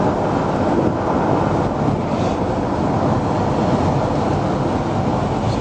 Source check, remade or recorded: recorded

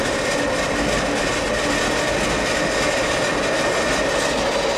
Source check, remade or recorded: recorded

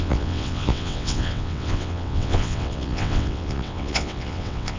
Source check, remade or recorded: remade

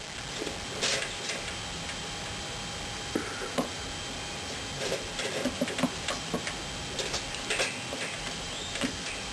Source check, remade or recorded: recorded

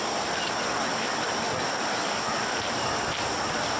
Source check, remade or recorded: recorded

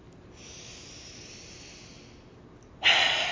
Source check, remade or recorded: recorded